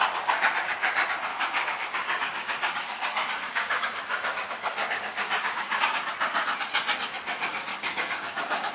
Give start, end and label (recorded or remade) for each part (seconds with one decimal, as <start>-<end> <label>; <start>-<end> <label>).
0.0-1.3 recorded; 1.3-5.8 remade; 5.8-7.7 recorded; 7.7-8.7 remade